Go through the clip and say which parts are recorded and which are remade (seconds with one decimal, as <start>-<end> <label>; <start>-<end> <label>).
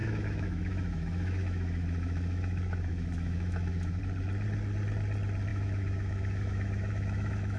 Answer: 0.0-4.0 remade; 4.0-5.5 recorded; 5.5-7.6 remade